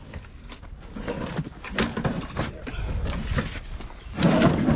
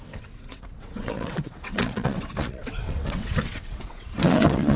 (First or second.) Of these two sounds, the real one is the first